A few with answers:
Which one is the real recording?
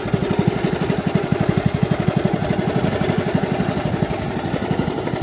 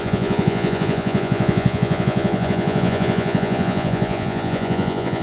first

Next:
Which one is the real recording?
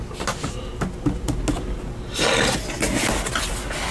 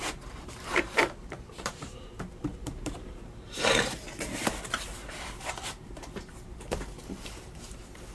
first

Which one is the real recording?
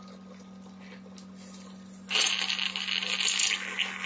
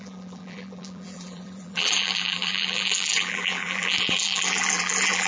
first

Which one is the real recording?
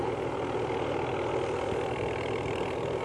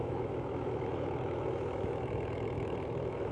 first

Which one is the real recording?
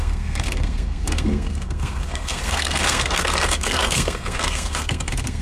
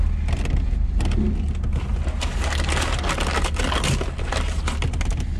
second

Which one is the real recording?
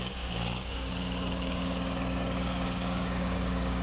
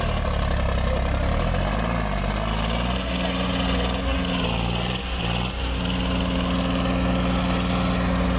second